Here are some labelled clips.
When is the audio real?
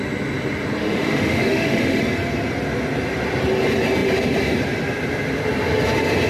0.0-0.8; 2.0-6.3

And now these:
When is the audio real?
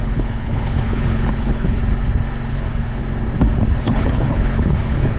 1.8-2.5; 3.0-3.8